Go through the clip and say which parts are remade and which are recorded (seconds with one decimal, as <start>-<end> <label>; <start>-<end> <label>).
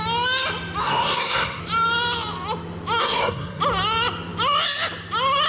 0.0-0.8 recorded; 0.8-1.6 remade; 1.6-3.0 recorded; 3.0-3.6 remade; 3.6-5.5 recorded